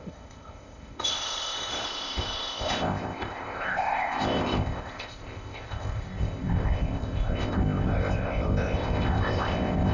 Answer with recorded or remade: remade